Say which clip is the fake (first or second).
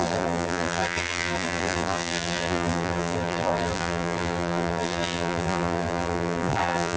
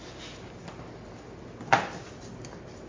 first